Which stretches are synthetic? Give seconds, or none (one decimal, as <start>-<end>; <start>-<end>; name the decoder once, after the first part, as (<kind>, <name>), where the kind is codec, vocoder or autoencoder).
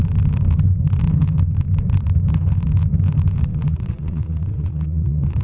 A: 3.5-5.4 (vocoder, WaveNeXt)